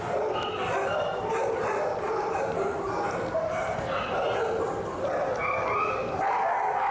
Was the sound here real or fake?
real